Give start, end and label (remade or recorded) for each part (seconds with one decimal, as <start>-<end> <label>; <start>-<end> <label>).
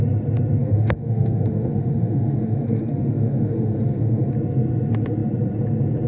0.0-0.6 recorded; 0.6-4.3 remade; 4.3-6.1 recorded